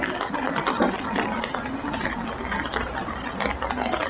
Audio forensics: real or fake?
real